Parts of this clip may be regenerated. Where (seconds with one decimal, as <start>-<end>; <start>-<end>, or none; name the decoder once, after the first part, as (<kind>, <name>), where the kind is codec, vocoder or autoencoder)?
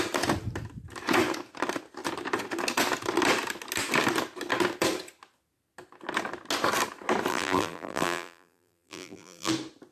7.3-9.5 (vocoder, BigVGAN v2)